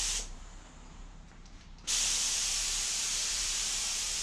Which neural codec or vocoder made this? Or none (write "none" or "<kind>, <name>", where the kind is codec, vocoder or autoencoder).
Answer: vocoder, BigVGAN v2